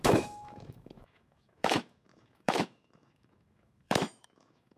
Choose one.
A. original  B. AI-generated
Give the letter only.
B